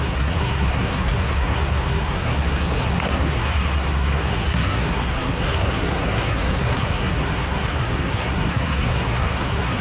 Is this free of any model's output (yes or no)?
no